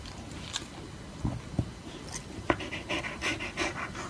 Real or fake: real